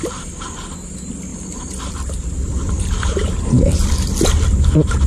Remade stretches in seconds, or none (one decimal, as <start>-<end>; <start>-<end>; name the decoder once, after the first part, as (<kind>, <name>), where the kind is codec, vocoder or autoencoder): 1.3-3.9 (vocoder, BigVGAN v2)